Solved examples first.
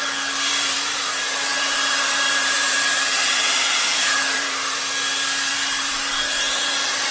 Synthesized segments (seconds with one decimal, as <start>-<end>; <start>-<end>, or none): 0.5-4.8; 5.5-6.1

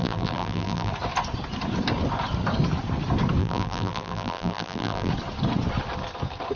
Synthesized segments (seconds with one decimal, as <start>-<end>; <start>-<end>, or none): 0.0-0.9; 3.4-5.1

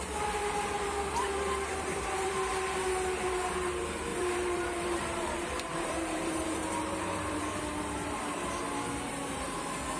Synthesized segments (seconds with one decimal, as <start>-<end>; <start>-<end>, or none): 1.7-2.3; 4.1-7.4

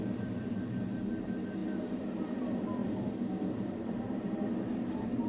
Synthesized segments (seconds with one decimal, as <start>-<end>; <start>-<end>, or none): 2.8-4.5

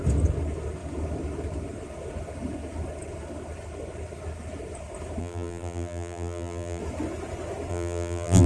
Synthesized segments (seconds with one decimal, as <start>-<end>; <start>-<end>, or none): 5.2-6.8; 7.7-8.5